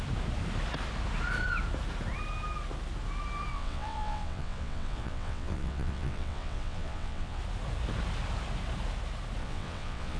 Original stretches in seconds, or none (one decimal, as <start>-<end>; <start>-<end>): 0.0-3.5; 7.4-9.4